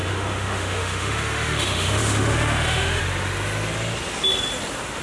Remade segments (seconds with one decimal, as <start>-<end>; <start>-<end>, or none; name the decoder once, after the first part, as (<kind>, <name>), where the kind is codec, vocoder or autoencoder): 0.0-3.0 (autoencoder, DAC-VAE)

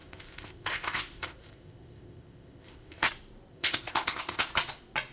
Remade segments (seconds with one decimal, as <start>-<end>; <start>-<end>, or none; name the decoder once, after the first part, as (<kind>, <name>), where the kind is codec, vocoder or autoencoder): 0.0-3.1 (codec, ZipCodec); 3.5-4.5

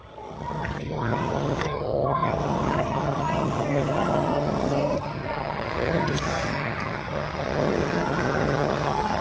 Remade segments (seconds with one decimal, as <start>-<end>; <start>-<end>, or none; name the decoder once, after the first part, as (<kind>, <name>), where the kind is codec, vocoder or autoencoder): 0.0-9.2 (vocoder, HiFi-GAN)

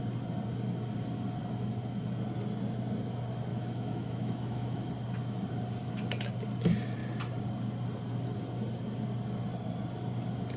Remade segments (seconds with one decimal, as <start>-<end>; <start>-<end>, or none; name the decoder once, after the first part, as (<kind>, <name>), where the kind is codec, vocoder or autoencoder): 3.5-4.9 (autoencoder, DAC-VAE)

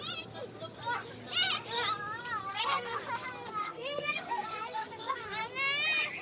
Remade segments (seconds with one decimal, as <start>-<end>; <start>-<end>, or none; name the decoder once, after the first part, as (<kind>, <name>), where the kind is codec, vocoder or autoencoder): 2.5-3.0 (codec, SNAC); 3.6-5.5

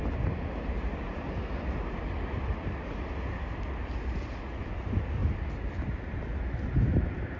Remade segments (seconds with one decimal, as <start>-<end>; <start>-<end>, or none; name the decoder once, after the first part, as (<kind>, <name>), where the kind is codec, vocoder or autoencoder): none